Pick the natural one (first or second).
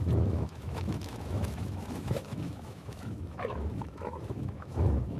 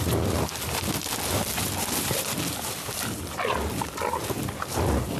second